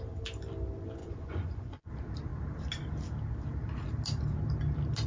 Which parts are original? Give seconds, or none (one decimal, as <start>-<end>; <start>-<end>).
0.0-1.0; 1.9-5.1